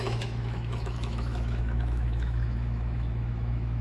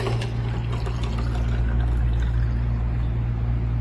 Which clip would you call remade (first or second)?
first